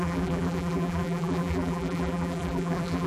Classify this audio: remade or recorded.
remade